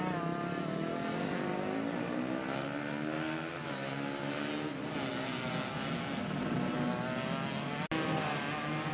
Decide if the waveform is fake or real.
real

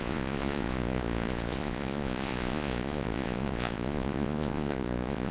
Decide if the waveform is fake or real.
fake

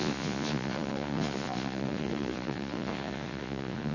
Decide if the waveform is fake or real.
fake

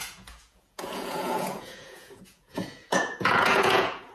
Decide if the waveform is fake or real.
fake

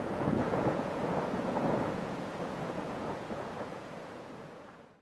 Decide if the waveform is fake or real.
fake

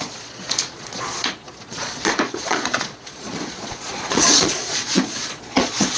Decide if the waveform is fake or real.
fake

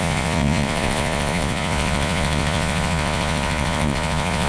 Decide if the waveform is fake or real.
fake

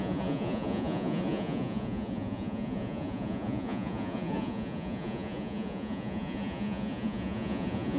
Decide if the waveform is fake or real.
fake